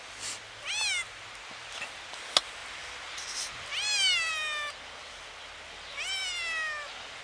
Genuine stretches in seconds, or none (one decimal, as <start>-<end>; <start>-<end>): 0.0-7.2